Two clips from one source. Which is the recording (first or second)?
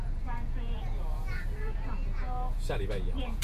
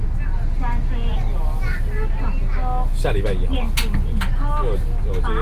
second